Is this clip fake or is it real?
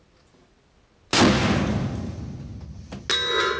real